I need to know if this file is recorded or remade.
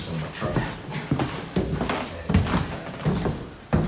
recorded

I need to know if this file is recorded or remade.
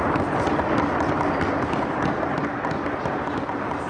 recorded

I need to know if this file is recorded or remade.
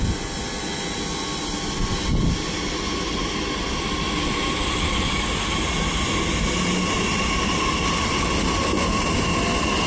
recorded